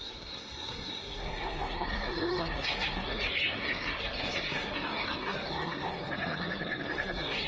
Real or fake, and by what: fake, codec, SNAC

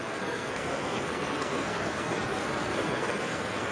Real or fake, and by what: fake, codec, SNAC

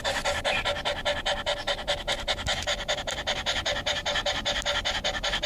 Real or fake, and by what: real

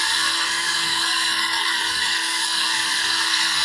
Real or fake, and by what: fake, codec, SNAC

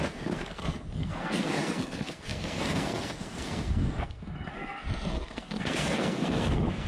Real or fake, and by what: fake, codec, SNAC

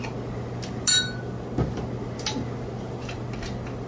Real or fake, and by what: real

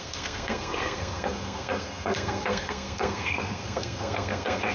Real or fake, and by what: fake, codec, SNAC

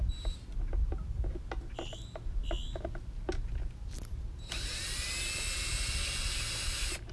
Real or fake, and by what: real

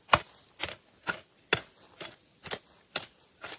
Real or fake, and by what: real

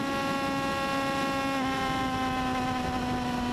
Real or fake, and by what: real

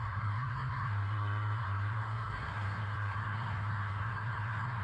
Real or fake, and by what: fake, codec, SNAC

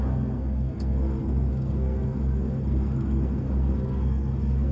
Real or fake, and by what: fake, codec, SNAC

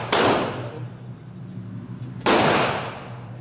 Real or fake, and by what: real